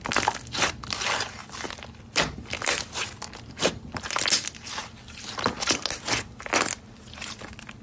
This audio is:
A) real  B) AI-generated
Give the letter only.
A